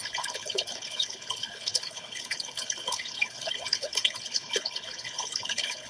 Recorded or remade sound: remade